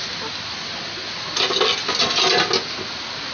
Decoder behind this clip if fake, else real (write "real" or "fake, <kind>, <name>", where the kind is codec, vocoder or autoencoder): real